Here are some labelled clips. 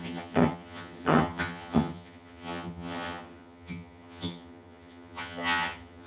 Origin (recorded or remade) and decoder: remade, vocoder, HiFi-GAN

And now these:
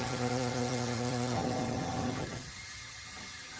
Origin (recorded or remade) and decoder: remade, vocoder, HiFi-GAN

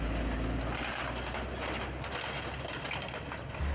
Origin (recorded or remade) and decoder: recorded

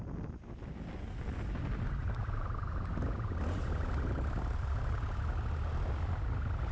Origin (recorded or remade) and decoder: recorded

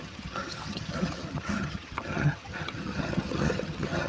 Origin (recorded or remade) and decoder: remade, vocoder, HiFi-GAN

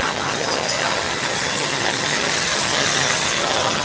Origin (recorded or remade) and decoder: remade, vocoder, HiFi-GAN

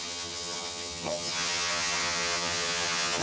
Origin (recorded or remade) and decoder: remade, vocoder, HiFi-GAN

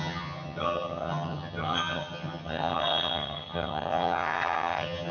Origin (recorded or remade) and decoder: remade, vocoder, HiFi-GAN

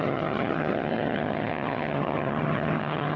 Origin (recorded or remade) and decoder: remade, vocoder, HiFi-GAN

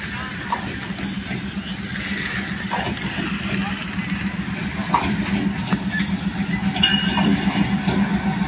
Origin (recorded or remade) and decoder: recorded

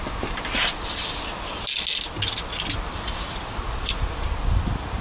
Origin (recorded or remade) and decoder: recorded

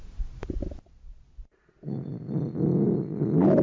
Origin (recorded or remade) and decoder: recorded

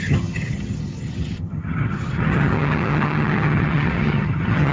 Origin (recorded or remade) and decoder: remade, vocoder, HiFi-GAN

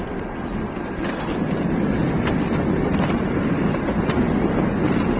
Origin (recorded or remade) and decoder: recorded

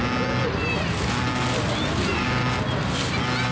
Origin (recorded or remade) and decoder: recorded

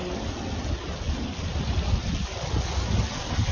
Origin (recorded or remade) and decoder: recorded